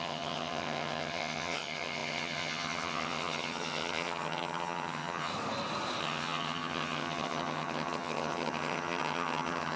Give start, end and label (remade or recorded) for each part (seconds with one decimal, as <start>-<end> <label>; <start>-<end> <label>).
0.0-5.3 remade; 5.3-6.0 recorded; 6.0-9.8 remade